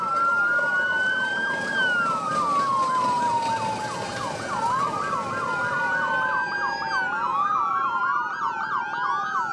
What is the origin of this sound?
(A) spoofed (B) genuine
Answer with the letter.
B